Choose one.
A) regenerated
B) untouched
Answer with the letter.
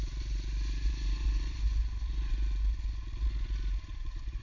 A